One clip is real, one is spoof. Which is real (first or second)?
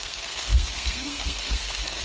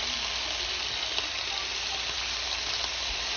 second